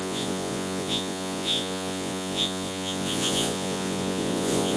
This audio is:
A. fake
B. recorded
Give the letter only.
A